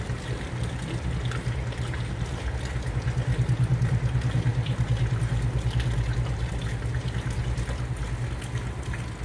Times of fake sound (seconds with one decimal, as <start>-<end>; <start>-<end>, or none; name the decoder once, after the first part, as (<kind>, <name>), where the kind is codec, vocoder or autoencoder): none